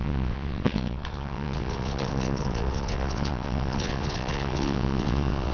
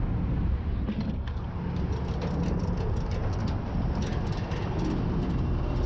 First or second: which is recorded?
second